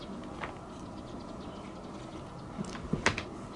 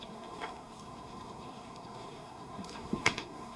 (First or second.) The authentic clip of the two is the first